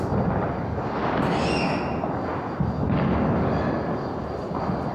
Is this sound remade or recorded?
recorded